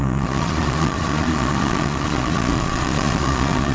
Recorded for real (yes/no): no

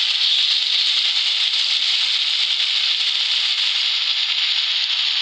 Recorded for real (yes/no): yes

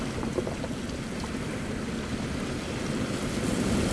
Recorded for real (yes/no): yes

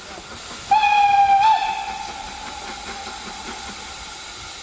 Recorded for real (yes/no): yes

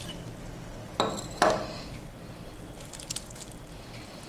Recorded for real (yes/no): yes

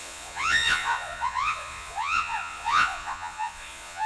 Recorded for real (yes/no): no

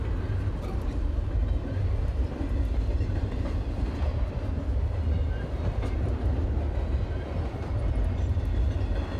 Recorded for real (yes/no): yes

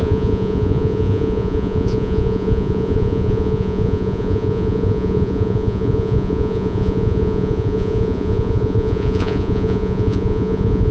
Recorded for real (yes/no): no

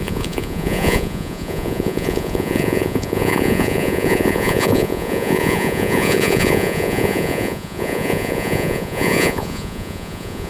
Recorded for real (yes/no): no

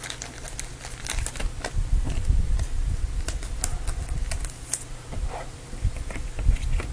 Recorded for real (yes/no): yes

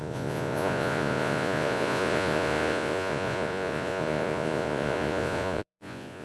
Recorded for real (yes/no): no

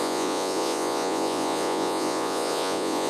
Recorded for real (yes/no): no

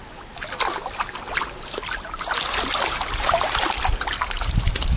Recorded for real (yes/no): yes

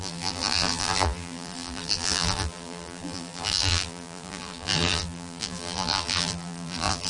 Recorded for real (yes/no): no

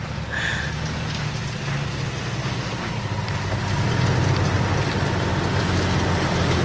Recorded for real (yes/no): yes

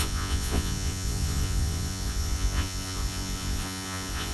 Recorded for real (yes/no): no